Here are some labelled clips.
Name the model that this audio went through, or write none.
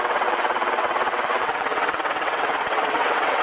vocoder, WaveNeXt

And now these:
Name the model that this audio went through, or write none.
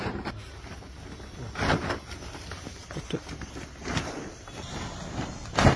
none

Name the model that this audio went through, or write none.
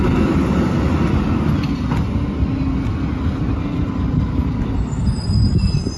none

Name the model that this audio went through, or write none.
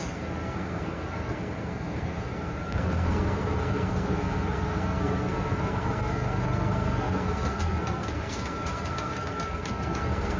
codec, SNAC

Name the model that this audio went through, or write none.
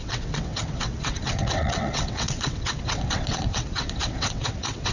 vocoder, WaveNeXt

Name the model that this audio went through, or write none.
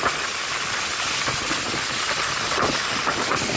none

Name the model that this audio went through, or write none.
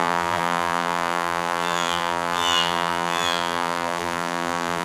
vocoder, BigVGAN v2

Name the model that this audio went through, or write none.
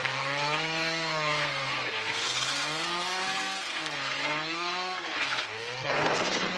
codec, SNAC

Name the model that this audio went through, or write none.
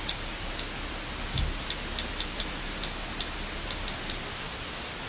none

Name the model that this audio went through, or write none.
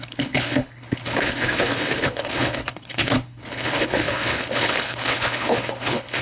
codec, HILCodec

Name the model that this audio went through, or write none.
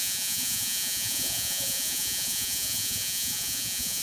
vocoder, Vocos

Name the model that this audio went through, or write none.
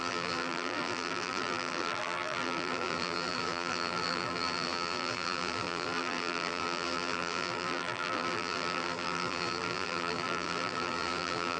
vocoder, BigVGAN v2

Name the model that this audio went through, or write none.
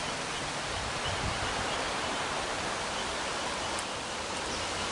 none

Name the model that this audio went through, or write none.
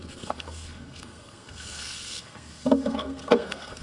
codec, SNAC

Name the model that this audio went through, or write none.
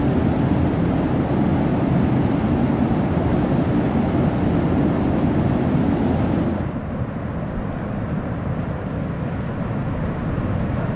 none